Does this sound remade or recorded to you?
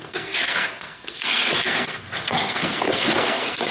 remade